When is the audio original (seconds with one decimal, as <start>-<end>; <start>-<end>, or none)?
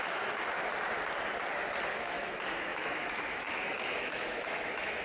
0.6-2.0